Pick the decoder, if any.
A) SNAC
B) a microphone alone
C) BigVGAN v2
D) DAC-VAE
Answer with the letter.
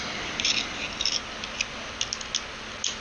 B